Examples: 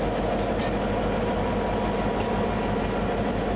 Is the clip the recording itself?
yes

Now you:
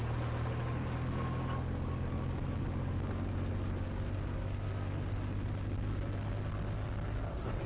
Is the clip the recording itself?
yes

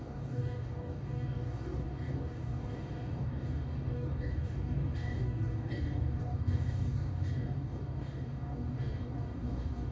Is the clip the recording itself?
no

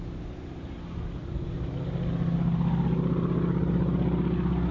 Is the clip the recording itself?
yes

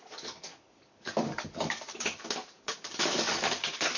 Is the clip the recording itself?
no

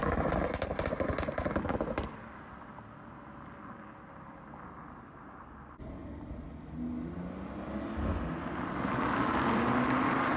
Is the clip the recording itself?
yes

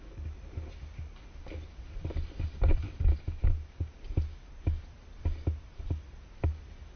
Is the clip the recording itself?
yes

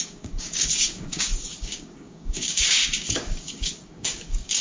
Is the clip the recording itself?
no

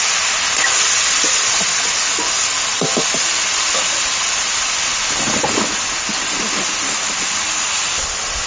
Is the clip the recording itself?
yes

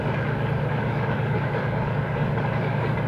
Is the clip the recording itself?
no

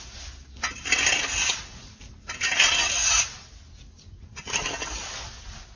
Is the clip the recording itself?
yes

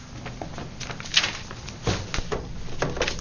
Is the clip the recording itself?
yes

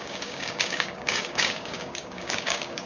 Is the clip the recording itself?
no